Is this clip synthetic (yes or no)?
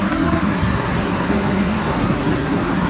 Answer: yes